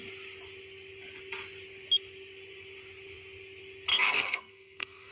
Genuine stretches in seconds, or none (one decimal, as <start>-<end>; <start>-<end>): 0.0-3.9